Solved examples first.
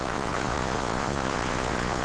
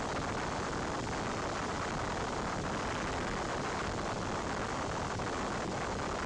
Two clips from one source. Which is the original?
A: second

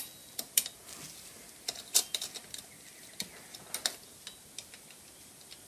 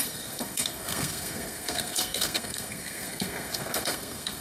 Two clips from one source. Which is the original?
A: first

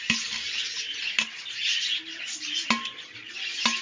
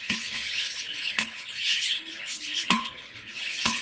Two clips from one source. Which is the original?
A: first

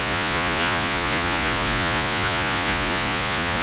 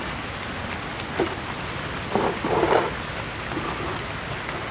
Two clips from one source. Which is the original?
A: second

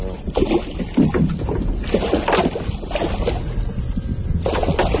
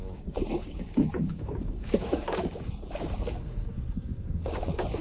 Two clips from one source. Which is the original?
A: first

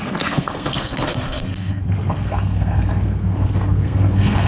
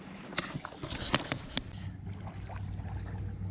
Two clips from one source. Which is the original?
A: second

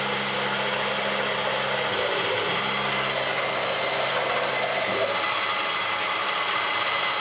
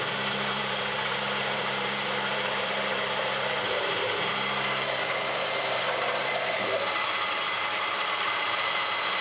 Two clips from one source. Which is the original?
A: first